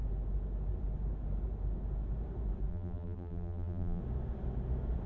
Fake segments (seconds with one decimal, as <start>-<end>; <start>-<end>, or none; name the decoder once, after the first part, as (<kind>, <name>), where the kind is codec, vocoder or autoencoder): 2.7-4.0 (vocoder, BigVGAN v2)